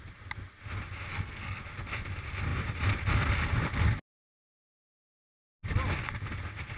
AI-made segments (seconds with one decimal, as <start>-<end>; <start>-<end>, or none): 1.1-1.6